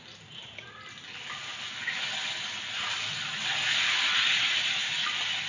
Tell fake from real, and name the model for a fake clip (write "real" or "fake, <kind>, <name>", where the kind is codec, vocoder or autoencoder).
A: real